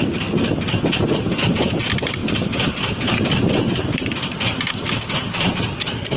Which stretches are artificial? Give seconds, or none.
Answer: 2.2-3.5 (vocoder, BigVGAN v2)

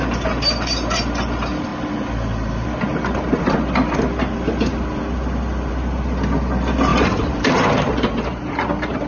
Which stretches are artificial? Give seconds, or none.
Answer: 6.9-9.1 (vocoder, BigVGAN v2)

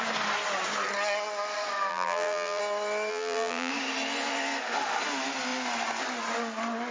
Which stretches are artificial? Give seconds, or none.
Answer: 1.9-2.6 (vocoder, BigVGAN v2); 3.1-3.7

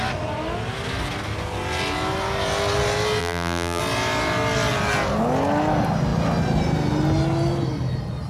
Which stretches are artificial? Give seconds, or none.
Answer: 3.2-3.8 (vocoder, BigVGAN v2)

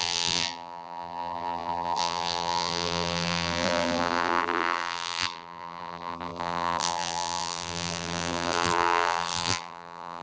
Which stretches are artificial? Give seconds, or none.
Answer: 0.0-10.2 (vocoder, BigVGAN v2)

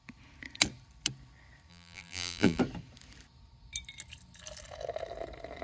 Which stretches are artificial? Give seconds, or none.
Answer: 1.7-2.6 (vocoder, BigVGAN v2)